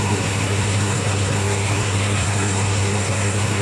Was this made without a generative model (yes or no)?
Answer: no